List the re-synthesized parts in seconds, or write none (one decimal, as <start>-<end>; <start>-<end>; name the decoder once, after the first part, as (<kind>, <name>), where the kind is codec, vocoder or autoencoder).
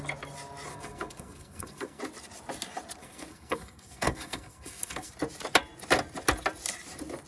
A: 0.7-2.0 (codec, SNAC); 3.0-5.1